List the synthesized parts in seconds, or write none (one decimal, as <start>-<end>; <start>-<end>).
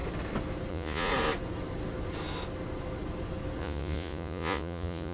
0.7-1.1; 3.6-5.1